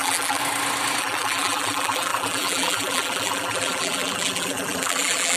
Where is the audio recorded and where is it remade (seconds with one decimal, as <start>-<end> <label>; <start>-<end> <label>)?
0.0-0.4 remade; 0.4-1.0 recorded; 1.0-5.4 remade